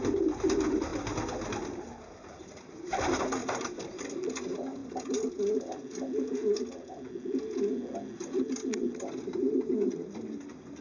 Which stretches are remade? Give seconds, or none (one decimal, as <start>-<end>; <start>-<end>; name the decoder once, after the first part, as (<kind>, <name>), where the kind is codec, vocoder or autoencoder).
3.4-4.0 (vocoder, BigVGAN v2)